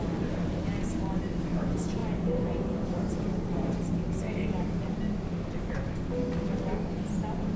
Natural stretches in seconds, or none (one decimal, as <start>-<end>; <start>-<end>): 0.0-2.0; 3.2-7.6